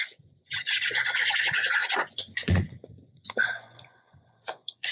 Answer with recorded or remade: remade